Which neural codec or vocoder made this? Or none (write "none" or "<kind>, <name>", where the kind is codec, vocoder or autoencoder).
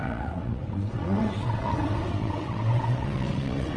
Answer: vocoder, WaveNeXt